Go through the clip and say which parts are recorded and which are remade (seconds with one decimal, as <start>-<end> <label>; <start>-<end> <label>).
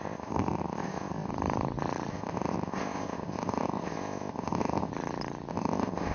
0.0-1.3 remade; 1.3-2.1 recorded; 2.1-4.9 remade; 4.9-5.5 recorded; 5.5-6.1 remade